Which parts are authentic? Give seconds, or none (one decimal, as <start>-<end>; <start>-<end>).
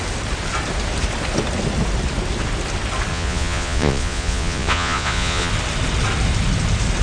0.0-3.1; 5.5-7.0